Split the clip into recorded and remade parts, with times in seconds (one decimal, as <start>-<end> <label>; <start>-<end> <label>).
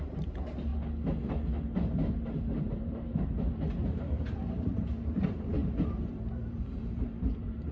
0.0-0.7 remade; 0.7-2.6 recorded; 2.6-7.7 remade